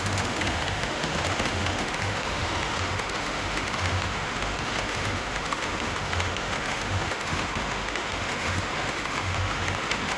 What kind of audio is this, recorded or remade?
remade